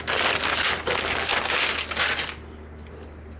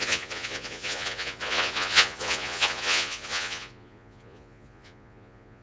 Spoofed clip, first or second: second